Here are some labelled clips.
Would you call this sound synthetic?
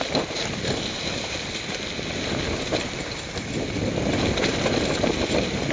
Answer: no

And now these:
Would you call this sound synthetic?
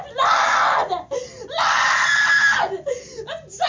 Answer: no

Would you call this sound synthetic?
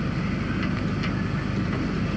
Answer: no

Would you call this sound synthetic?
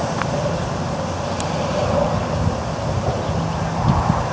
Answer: no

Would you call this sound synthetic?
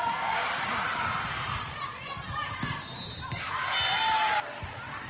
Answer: no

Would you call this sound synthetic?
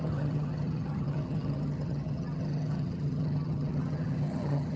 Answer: yes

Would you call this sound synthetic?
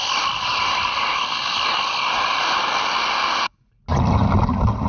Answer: no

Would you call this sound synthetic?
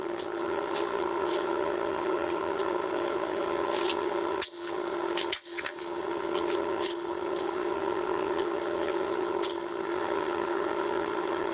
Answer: yes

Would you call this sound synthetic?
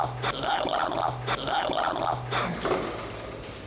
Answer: no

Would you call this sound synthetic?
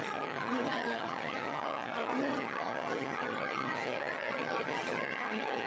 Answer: yes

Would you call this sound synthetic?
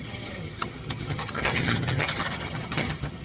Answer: yes